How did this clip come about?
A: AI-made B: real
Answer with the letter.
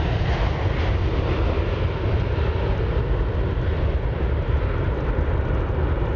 B